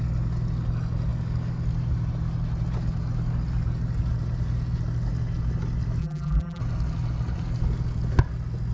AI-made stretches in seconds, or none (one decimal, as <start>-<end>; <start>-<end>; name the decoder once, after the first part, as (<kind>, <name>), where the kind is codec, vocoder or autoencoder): 6.0-6.6 (vocoder, BigVGAN v2)